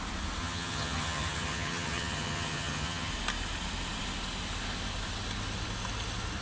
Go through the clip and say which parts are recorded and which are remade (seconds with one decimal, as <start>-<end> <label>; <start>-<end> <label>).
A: 0.0-0.4 recorded; 0.4-3.1 remade; 3.1-6.4 recorded